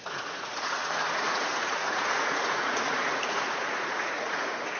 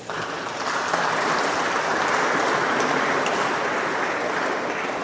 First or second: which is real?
second